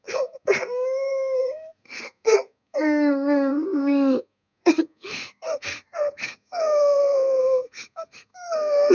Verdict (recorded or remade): remade